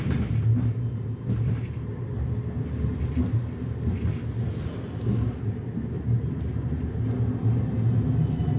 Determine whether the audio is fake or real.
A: real